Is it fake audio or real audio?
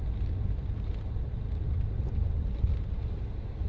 real